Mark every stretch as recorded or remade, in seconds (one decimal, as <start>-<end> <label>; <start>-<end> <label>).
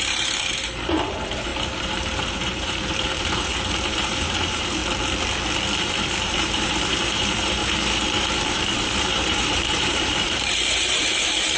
0.0-4.8 remade; 4.8-5.7 recorded; 5.7-11.6 remade